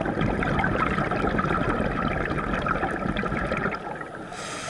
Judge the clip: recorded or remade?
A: recorded